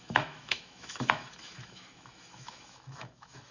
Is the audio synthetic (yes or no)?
yes